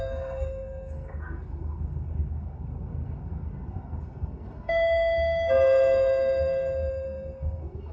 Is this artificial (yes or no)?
yes